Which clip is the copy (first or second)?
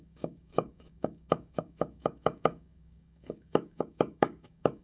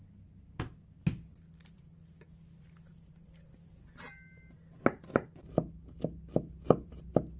first